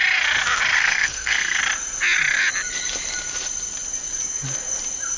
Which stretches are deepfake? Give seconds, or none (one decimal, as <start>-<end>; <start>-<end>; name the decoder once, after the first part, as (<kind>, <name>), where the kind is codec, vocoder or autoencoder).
0.8-1.6 (codec, SNAC)